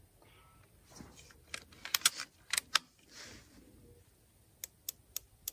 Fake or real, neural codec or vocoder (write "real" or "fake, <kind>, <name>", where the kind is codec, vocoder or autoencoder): real